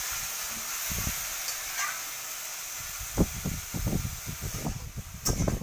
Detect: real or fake real